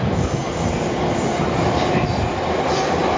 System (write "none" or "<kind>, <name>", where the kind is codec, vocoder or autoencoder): none